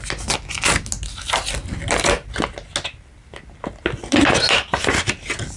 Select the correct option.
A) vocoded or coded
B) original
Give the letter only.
B